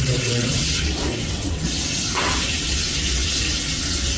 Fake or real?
fake